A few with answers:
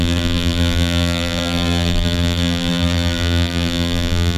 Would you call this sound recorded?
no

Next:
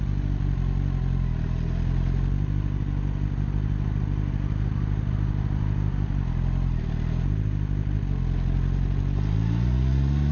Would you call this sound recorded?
yes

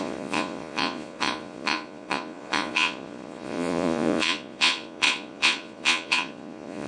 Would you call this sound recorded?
no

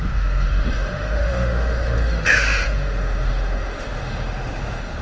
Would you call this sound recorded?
no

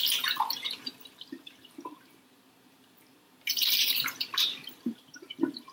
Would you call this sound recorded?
no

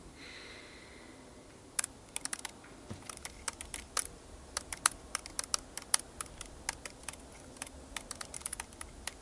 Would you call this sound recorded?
yes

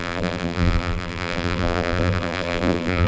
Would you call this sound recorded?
no